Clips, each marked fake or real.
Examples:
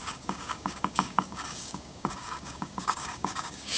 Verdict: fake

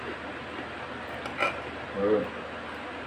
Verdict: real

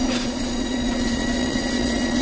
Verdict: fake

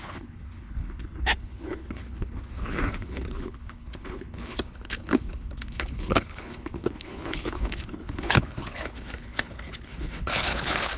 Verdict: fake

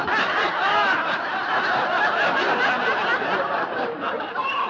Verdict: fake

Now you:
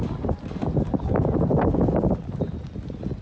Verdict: real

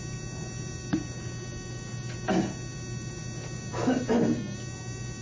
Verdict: real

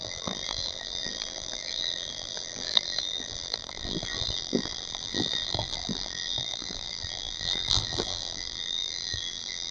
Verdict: fake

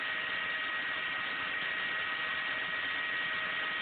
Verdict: real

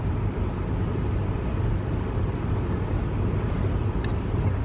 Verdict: real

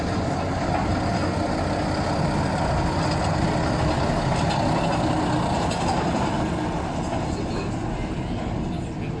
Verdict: real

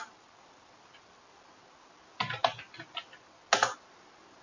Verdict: real